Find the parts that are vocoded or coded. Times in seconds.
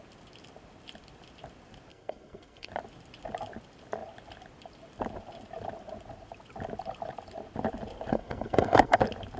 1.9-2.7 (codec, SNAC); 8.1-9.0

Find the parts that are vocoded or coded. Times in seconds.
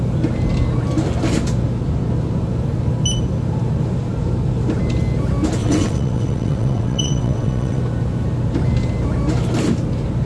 5.6-7.8 (vocoder, WaveNeXt)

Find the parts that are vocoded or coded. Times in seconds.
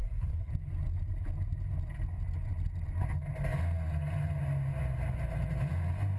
0.0-0.5 (codec, SNAC)